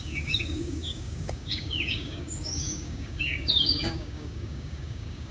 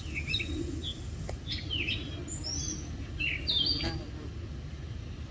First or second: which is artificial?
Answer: first